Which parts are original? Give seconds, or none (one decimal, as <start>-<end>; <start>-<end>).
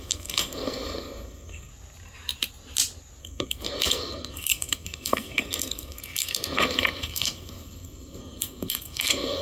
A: 1.7-3.2